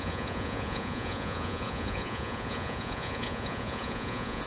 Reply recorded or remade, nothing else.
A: remade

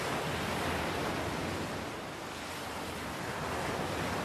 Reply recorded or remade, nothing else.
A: recorded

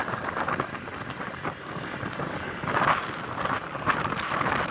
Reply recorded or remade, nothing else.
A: recorded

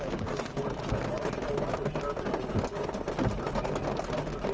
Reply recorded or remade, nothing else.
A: recorded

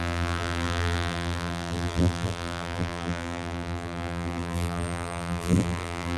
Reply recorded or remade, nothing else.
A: remade